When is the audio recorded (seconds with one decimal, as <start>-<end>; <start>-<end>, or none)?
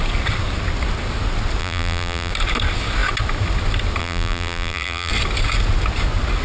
0.0-1.6; 2.3-4.0; 5.1-6.4